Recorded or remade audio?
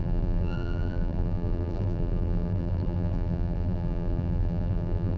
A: remade